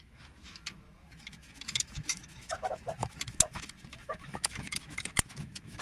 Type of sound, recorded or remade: remade